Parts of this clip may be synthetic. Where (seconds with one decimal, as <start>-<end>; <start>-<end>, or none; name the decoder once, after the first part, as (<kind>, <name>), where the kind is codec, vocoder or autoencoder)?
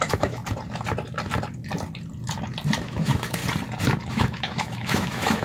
0.0-0.4 (autoencoder, DAC-VAE); 2.8-3.4; 4.1-5.4